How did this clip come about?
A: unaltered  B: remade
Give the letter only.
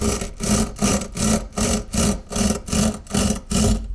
A